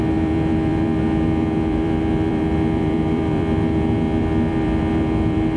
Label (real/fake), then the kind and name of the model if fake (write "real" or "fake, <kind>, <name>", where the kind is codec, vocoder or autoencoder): fake, vocoder, BigVGAN v2